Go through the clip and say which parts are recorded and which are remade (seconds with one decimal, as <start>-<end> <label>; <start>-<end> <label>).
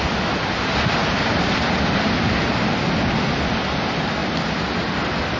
0.0-1.0 recorded; 1.0-2.0 remade; 2.0-4.2 recorded; 4.2-4.9 remade; 4.9-5.4 recorded